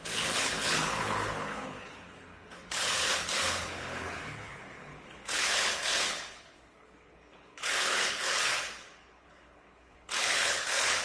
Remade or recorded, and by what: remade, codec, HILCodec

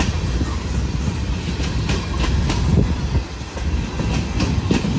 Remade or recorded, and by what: recorded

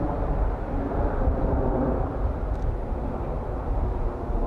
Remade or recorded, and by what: recorded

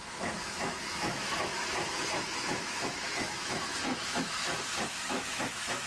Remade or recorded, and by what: remade, autoencoder, DAC-VAE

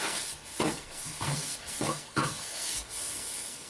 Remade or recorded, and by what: remade, codec, SNAC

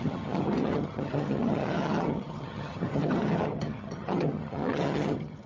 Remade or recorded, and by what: remade, vocoder, HiFi-GAN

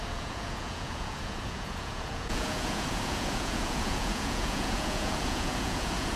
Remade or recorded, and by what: remade, vocoder, Vocos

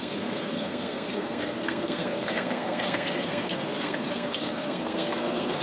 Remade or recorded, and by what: remade, codec, SNAC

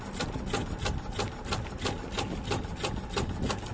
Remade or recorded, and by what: recorded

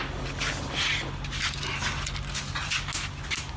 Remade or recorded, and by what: recorded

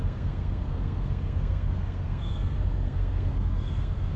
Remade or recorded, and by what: remade, codec, SNAC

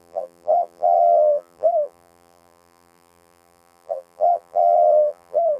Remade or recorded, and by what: remade, vocoder, BigVGAN v2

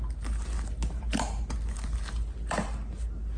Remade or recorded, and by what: recorded